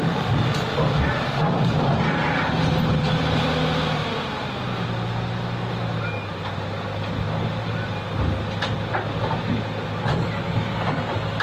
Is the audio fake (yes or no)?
no